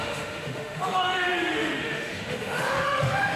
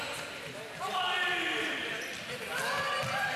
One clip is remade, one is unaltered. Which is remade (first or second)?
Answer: first